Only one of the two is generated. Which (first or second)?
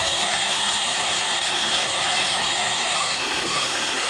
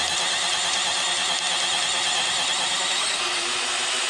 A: first